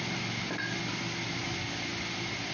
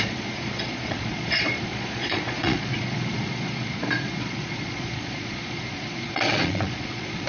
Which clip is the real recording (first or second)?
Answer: first